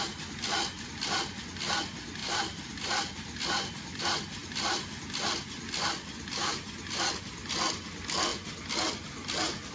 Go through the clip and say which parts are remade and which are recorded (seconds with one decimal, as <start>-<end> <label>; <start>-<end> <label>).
0.0-2.2 recorded; 2.2-4.0 remade; 4.0-4.4 recorded; 4.4-5.0 remade; 5.0-9.7 recorded